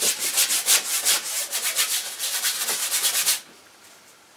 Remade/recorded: remade